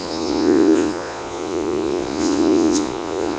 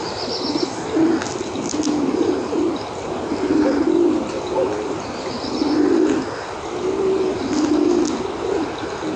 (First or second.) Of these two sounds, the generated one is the first